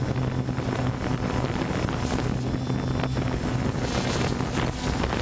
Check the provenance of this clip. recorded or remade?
recorded